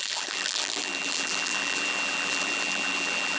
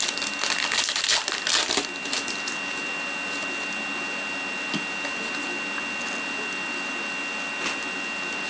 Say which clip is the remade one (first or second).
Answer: first